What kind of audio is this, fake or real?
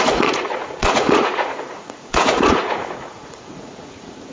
fake